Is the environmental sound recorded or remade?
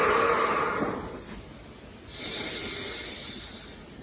recorded